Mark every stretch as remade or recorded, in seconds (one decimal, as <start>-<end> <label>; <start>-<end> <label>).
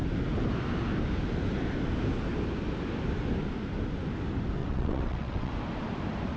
0.0-4.6 recorded; 4.6-5.5 remade; 5.5-6.4 recorded